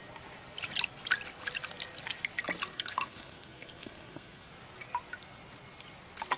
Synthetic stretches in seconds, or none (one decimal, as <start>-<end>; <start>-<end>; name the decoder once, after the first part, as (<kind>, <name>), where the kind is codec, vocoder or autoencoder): 2.7-4.5 (codec, SNAC)